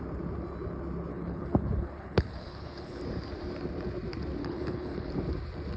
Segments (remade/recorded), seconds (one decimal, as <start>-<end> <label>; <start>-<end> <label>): 0.0-1.1 recorded; 1.1-3.0 remade; 3.0-4.4 recorded; 4.4-5.1 remade; 5.1-5.8 recorded